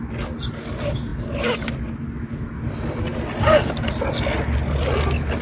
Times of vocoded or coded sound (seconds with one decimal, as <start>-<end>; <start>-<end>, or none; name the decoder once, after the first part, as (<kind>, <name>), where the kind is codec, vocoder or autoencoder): none